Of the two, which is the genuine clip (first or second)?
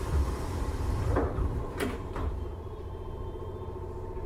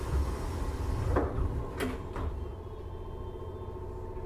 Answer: second